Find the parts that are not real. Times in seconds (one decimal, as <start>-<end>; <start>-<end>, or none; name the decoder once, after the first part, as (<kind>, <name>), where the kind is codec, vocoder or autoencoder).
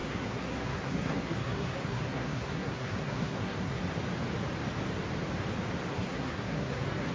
0.0-3.8 (codec, SNAC); 5.9-7.1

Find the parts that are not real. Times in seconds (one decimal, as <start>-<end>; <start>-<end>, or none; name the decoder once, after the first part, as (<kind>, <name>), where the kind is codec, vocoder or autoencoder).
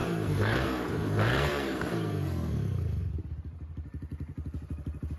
0.0-3.1 (codec, SNAC)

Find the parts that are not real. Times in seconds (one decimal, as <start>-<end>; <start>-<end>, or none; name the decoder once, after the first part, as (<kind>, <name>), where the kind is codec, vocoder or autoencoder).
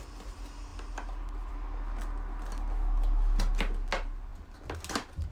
none